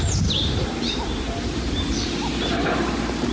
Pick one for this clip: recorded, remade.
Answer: remade